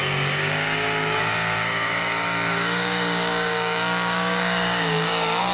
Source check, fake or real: fake